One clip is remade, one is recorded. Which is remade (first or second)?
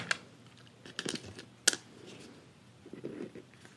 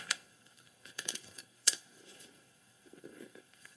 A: second